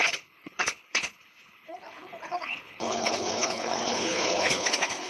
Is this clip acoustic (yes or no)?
no